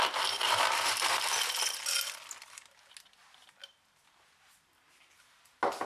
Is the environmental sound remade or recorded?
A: recorded